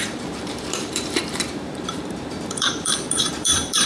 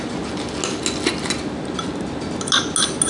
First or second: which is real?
second